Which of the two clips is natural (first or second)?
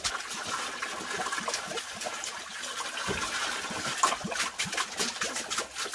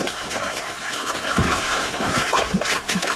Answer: first